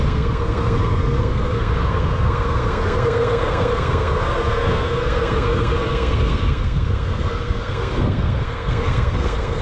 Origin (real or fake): fake